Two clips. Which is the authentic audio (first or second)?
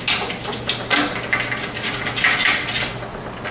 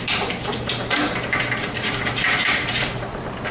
first